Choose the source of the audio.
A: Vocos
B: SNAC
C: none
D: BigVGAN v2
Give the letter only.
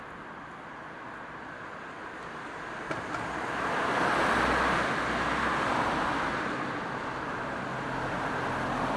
C